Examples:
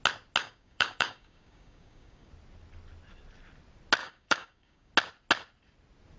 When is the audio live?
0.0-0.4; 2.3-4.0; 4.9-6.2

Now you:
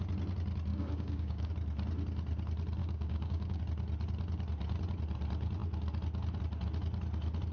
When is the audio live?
0.0-0.7; 1.5-2.8; 3.6-7.5

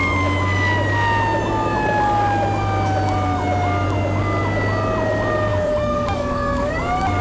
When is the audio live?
0.0-5.5; 6.7-7.2

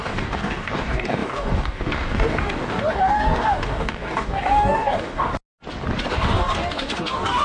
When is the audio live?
5.3-6.1

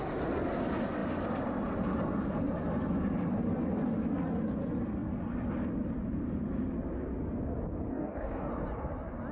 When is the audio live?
0.0-7.9; 8.5-9.3